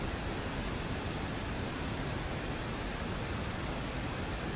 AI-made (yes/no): no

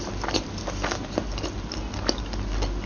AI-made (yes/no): no